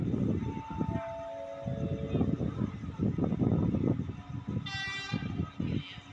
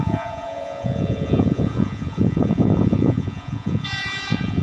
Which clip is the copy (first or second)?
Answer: second